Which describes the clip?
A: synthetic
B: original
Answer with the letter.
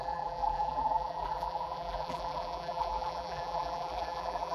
A